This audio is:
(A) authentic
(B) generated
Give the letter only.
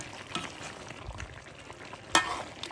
A